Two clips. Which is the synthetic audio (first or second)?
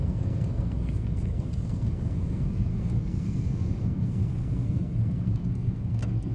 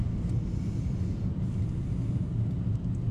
first